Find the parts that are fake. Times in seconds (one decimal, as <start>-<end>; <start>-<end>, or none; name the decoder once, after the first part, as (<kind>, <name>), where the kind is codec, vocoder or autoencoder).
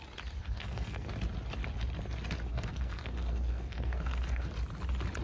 0.4-1.1 (codec, SNAC); 2.5-4.5